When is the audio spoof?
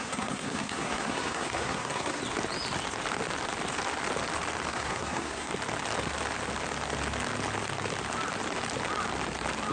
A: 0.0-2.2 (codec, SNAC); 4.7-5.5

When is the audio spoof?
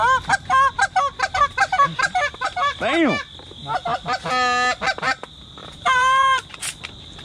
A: 5.6-6.6 (vocoder, BigVGAN v2)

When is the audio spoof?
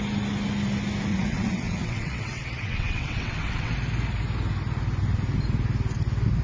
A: 1.1-3.7 (vocoder, WaveNeXt)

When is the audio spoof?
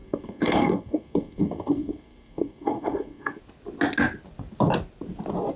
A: 0.0-3.4 (codec, SNAC)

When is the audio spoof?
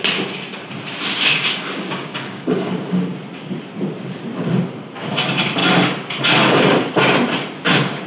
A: 1.3-2.7 (codec, DAC)